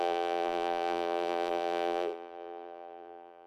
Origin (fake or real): fake